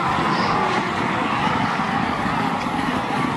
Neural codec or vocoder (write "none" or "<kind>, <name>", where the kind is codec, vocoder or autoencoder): codec, DAC